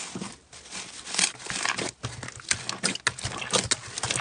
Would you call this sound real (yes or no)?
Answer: yes